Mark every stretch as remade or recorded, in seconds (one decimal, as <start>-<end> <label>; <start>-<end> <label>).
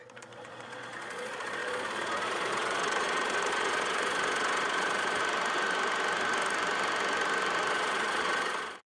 0.0-5.2 remade; 5.2-7.7 recorded; 7.7-8.9 remade